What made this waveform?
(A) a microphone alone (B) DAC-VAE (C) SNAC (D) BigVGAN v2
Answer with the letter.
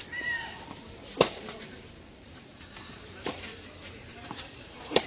D